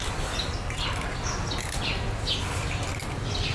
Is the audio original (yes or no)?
yes